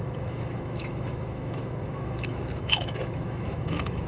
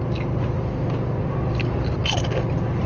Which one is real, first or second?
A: second